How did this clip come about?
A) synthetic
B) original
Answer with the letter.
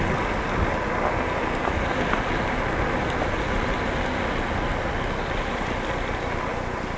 B